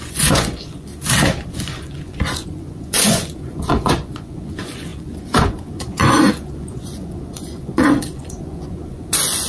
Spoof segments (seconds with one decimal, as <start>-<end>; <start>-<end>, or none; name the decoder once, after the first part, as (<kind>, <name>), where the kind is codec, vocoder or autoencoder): 0.0-0.9 (vocoder, Vocos); 1.5-9.5